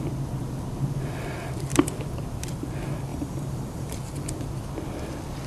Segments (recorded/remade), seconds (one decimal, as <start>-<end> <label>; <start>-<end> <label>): 0.0-3.1 recorded; 3.1-3.9 remade; 3.9-5.5 recorded